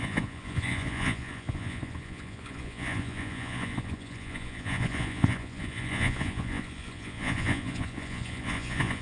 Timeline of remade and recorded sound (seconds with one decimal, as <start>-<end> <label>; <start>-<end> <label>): 0.0-9.0 remade